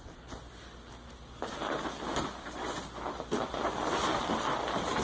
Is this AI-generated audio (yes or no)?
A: yes